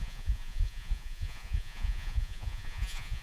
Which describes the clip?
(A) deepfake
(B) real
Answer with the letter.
A